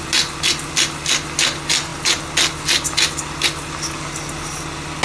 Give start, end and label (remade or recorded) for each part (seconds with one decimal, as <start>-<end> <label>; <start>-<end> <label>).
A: 0.0-5.0 recorded